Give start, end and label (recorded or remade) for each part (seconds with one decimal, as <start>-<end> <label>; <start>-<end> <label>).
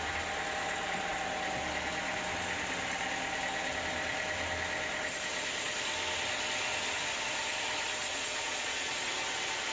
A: 0.0-8.0 recorded; 8.0-8.9 remade; 8.9-9.7 recorded